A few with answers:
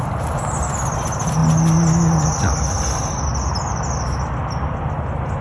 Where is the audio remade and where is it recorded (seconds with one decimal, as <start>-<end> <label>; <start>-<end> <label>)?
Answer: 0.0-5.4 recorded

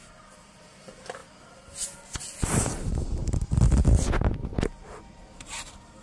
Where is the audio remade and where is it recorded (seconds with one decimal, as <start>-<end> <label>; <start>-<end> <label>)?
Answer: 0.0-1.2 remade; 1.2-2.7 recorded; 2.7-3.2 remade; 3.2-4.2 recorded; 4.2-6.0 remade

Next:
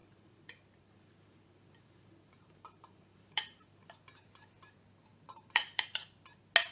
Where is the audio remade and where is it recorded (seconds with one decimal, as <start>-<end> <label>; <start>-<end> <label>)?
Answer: 0.0-4.0 remade; 4.0-5.1 recorded; 5.1-6.0 remade; 6.0-6.7 recorded